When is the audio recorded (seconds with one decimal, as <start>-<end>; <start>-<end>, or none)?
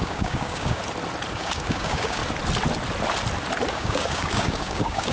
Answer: 0.8-1.3; 2.2-3.7